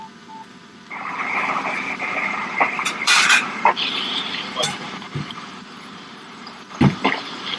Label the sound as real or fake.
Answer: fake